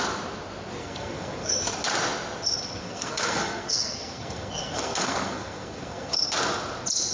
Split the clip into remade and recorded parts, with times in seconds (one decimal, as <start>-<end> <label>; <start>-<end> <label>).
0.0-0.8 recorded; 0.8-1.5 remade; 1.5-2.8 recorded; 2.8-6.1 remade; 6.1-7.1 recorded